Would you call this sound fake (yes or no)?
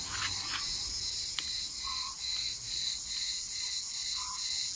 no